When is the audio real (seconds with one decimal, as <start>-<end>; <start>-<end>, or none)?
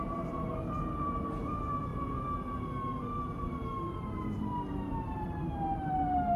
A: 1.9-2.9